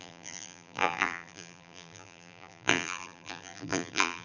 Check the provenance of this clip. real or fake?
fake